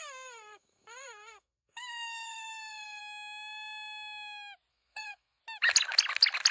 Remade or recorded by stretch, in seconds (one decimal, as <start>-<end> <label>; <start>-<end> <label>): 0.0-3.0 remade; 3.0-4.7 recorded; 4.7-5.4 remade; 5.4-6.5 recorded